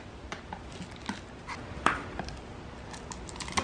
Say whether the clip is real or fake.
real